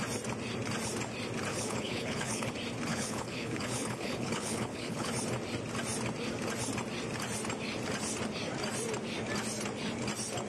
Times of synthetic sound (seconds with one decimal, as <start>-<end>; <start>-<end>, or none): 1.5-2.5; 2.9-5.1